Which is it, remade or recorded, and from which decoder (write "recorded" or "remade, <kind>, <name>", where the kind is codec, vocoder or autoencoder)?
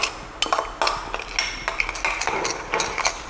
recorded